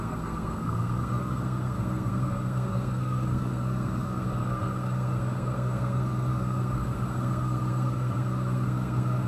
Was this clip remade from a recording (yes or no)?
yes